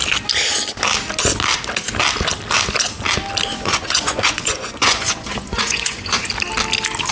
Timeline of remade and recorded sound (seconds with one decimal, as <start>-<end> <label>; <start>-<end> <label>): 0.0-3.5 recorded; 3.5-6.3 remade; 6.3-7.1 recorded